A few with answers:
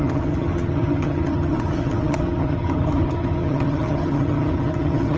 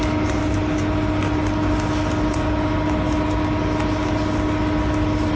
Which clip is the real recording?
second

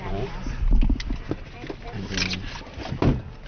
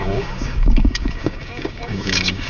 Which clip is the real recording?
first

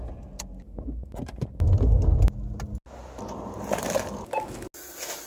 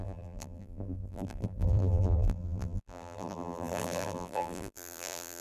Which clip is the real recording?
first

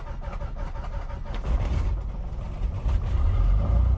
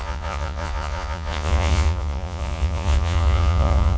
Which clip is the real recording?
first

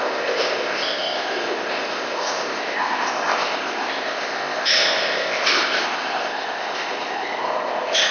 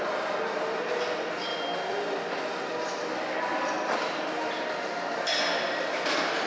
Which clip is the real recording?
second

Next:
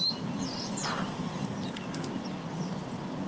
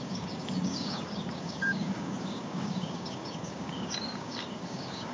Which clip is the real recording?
first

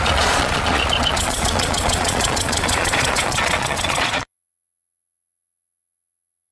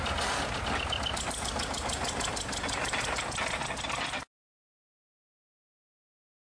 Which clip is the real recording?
second